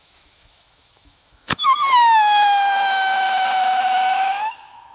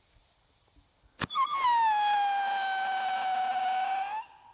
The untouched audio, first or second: second